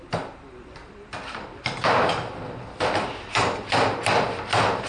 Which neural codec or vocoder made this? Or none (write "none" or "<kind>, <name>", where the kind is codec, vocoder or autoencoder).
none